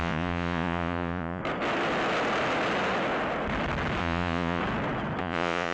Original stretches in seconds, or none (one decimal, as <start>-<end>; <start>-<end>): 1.4-4.0; 4.6-5.2